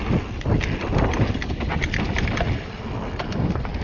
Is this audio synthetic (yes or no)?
no